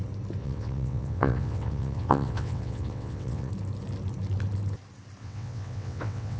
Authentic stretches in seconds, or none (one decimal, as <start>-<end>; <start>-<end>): 0.0-0.4; 3.5-5.2